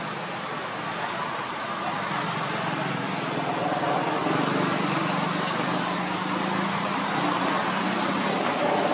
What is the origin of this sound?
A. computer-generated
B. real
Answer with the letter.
B